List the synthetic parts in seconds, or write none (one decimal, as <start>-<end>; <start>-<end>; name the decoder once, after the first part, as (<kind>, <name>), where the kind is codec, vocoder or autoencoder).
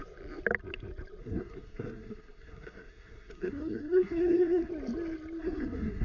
1.2-4.7 (codec, SNAC); 5.4-6.0